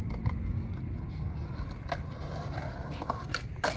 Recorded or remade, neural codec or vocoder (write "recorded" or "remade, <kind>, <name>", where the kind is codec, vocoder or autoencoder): recorded